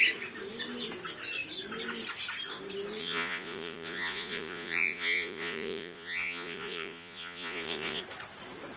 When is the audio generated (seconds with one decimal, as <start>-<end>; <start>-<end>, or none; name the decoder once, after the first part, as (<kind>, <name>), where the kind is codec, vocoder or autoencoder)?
3.0-8.0 (vocoder, Vocos)